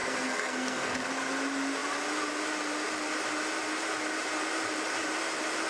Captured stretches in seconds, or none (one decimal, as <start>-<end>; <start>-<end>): 1.1-5.7